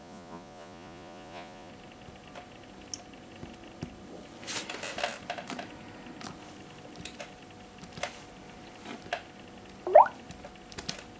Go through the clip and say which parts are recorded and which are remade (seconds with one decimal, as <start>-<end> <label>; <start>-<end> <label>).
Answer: 0.0-1.7 remade; 1.7-11.2 recorded